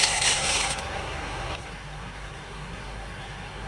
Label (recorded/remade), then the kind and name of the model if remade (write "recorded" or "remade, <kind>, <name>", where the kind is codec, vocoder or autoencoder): remade, codec, SNAC